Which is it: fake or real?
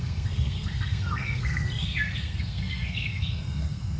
fake